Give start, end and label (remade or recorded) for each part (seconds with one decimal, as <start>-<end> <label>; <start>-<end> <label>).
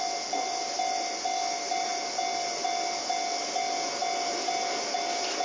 0.0-5.4 recorded